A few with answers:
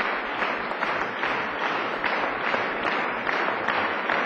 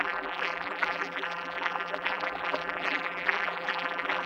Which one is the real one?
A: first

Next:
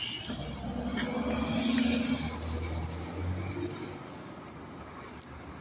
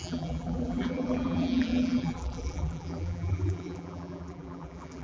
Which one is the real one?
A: first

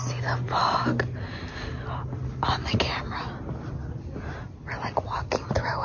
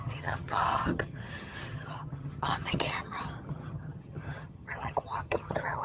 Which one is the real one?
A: first